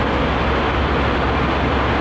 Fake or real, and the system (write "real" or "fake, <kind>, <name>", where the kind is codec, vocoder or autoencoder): real